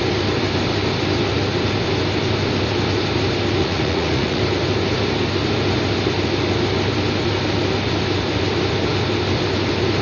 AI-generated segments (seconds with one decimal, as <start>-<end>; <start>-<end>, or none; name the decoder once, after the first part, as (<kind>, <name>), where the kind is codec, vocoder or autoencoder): 3.6-4.4 (vocoder, Vocos)